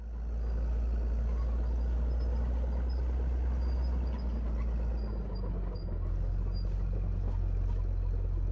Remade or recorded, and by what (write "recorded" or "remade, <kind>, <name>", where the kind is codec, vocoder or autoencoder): recorded